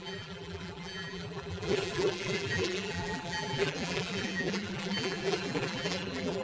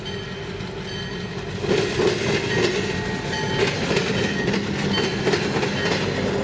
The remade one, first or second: first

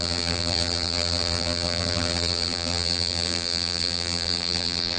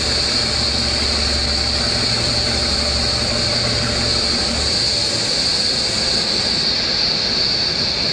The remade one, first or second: first